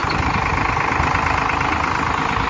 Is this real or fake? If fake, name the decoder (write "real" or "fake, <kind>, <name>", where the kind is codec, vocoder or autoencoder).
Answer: real